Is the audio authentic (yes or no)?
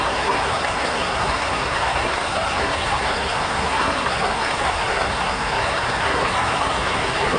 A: no